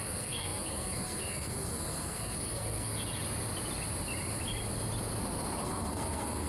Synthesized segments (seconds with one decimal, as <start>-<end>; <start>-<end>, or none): 0.0-2.9; 5.6-6.5